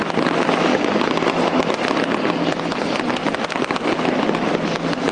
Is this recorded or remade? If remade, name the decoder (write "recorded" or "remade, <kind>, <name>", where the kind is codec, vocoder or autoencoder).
recorded